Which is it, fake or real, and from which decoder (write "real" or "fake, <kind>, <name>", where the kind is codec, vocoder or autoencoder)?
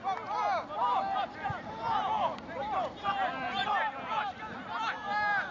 real